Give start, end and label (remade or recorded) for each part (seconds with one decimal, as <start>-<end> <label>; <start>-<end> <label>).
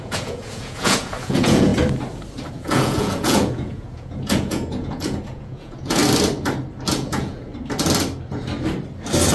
0.0-1.7 remade; 1.7-2.5 recorded; 2.5-6.0 remade; 6.0-6.9 recorded; 6.9-7.5 remade; 7.5-9.3 recorded